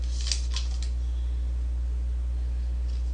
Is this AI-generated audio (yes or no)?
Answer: no